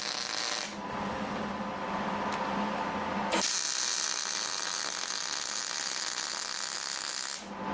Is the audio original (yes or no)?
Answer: yes